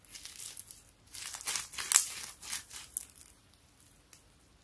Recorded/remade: recorded